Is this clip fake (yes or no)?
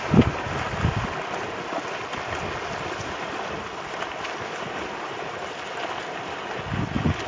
no